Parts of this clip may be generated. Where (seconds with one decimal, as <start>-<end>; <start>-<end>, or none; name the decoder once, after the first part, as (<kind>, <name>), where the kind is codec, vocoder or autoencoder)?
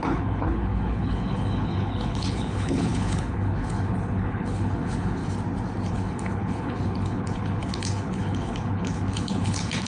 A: 0.0-5.2 (codec, HILCodec); 5.9-9.9